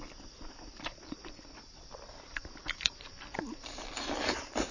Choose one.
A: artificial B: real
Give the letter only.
B